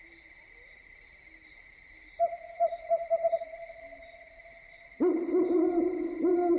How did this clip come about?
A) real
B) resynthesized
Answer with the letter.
B